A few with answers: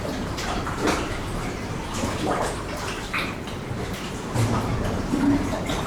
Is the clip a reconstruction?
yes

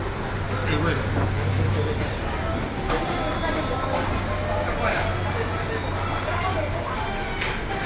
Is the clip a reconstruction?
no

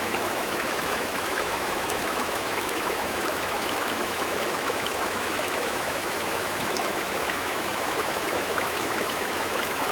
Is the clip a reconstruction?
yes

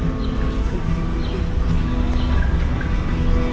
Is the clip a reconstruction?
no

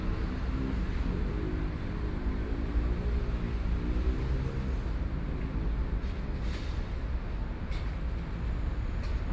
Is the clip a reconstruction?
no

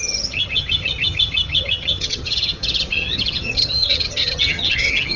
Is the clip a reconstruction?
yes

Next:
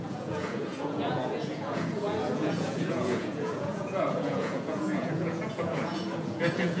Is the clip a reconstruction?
yes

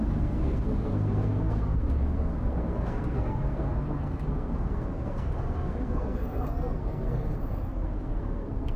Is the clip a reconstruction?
yes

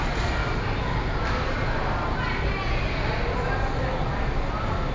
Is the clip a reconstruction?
no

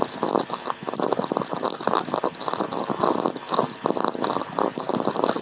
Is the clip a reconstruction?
no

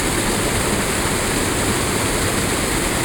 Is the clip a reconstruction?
no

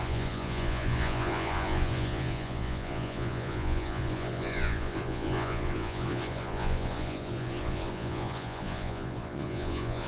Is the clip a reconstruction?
yes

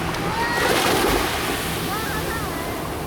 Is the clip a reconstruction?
no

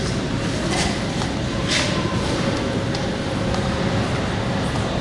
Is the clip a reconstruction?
yes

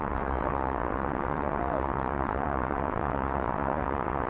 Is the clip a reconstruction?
yes